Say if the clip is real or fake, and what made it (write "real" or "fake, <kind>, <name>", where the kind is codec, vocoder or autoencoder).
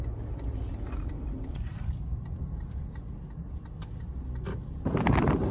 real